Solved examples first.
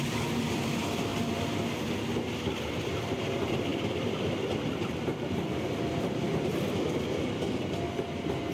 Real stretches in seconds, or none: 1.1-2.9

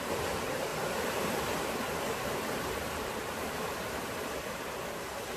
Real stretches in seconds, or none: 0.7-2.3

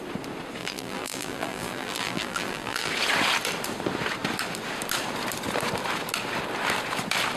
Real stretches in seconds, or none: 0.0-0.6; 2.9-7.4